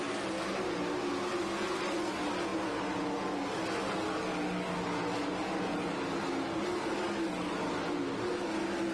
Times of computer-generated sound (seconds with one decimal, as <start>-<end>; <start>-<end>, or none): none